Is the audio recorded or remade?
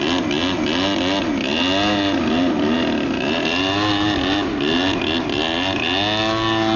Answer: recorded